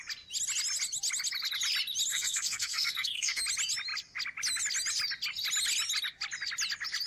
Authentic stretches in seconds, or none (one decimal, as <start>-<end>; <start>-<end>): 0.0-2.1; 3.4-7.1

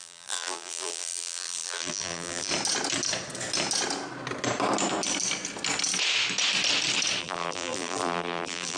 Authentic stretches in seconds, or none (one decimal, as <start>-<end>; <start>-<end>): 2.5-7.2